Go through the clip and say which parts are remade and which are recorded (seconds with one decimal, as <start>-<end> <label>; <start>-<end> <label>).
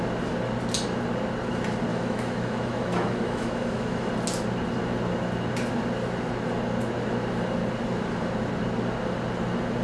0.0-1.9 recorded; 1.9-4.1 remade; 4.1-9.8 recorded